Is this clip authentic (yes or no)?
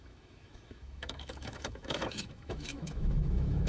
no